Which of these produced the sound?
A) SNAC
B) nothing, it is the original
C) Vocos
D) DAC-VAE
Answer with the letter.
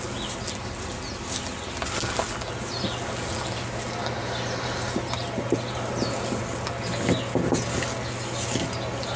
B